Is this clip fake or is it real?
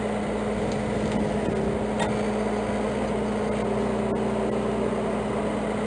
real